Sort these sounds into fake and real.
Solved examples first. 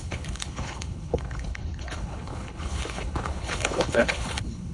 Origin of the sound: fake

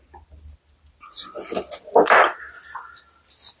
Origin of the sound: real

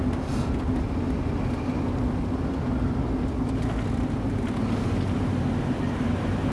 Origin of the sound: real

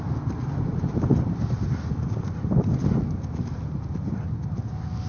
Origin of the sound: real